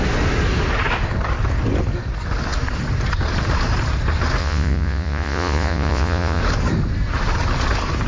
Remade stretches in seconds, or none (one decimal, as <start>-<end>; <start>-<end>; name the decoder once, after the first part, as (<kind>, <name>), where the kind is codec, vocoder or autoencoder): 4.4-6.4 (vocoder, Vocos)